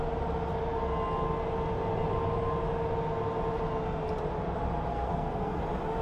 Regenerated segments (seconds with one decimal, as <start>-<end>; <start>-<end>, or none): 4.9-5.6